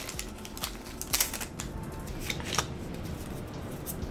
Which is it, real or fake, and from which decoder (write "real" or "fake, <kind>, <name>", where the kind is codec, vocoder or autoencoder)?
real